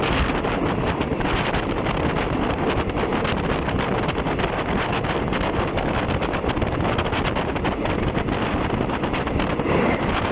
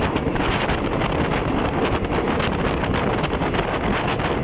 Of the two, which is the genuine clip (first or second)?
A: second